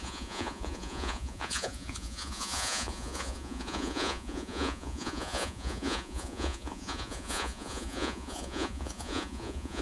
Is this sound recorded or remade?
remade